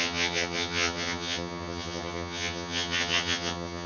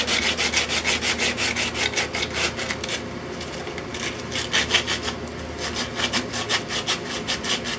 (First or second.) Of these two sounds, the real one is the second